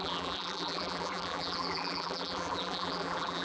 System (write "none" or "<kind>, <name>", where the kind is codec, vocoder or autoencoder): vocoder, BigVGAN v2